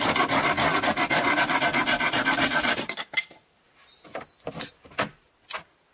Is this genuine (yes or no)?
yes